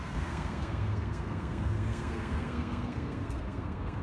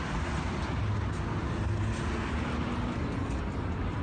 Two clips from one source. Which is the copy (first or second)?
first